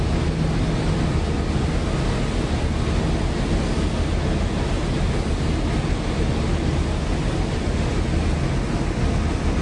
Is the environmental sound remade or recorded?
recorded